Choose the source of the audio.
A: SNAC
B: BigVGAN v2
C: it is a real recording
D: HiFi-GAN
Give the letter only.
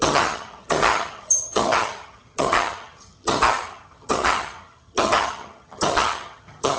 D